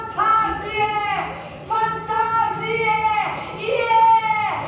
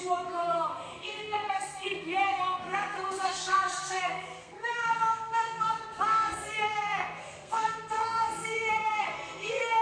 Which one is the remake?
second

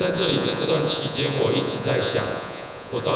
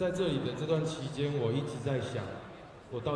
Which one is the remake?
first